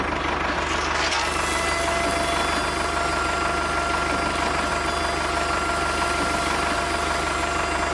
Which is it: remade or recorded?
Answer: recorded